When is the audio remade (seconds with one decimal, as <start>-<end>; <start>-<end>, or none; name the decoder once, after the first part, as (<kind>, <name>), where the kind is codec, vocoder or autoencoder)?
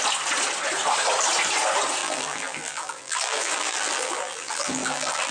2.0-5.3 (vocoder, BigVGAN v2)